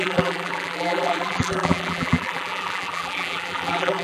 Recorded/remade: remade